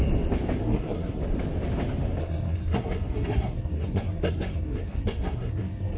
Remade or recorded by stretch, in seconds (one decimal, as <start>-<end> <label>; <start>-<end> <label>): 0.0-0.6 recorded; 0.6-1.2 remade; 1.2-2.2 recorded; 2.2-6.0 remade